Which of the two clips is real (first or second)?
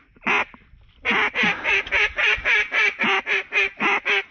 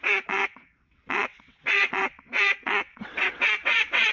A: first